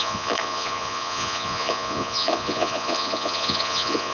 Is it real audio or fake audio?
fake